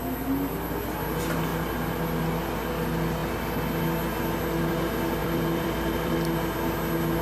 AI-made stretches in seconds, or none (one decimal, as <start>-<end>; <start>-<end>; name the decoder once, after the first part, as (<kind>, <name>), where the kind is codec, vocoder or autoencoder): 5.2-6.1 (vocoder, BigVGAN v2)